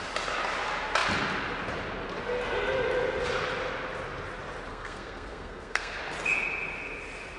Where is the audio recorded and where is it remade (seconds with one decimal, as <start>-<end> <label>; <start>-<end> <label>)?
0.0-4.7 recorded; 4.7-6.0 remade; 6.0-7.4 recorded